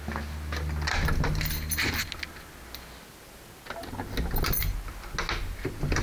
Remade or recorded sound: recorded